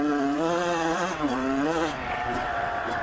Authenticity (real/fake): fake